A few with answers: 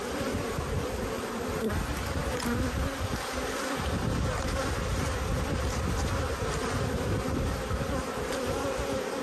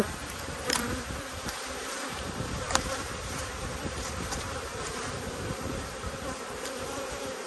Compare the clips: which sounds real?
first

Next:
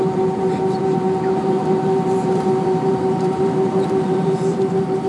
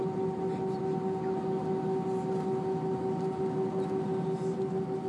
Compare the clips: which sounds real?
second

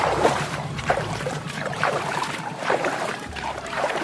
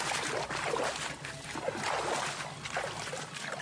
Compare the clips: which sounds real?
second